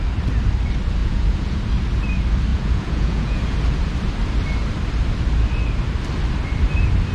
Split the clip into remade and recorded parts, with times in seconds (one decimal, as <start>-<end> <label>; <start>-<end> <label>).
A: 0.0-1.0 recorded; 1.0-1.6 remade; 1.6-2.5 recorded; 2.5-3.4 remade; 3.4-7.1 recorded